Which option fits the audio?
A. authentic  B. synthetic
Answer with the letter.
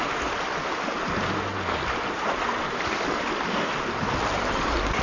A